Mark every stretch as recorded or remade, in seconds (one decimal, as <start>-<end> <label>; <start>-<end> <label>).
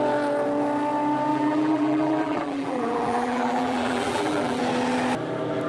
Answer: 0.0-1.3 recorded; 1.3-4.6 remade; 4.6-5.7 recorded